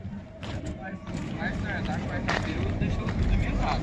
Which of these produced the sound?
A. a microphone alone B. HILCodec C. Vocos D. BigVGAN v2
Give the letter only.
D